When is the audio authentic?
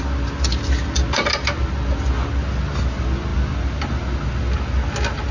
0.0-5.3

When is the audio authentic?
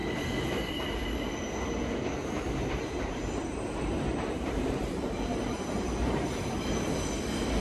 0.0-2.2; 6.8-7.6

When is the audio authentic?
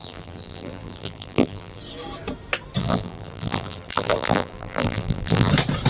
1.8-2.8; 5.5-5.9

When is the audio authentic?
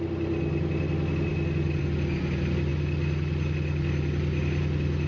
0.0-5.1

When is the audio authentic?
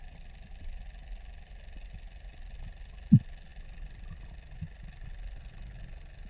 0.0-6.3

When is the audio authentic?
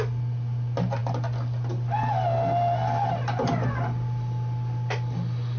0.0-5.6